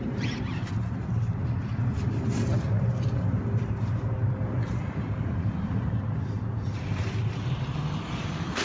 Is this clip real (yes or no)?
no